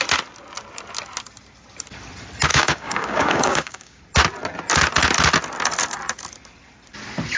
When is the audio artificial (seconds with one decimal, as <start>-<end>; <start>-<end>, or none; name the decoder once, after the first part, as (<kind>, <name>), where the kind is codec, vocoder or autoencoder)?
2.5-4.0 (codec, DAC)